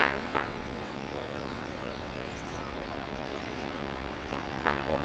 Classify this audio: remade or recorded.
remade